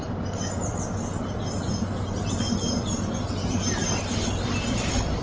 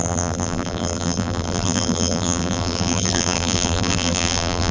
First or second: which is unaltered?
first